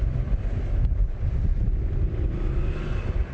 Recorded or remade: recorded